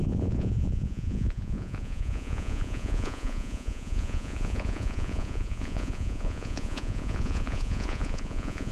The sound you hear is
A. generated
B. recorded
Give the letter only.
A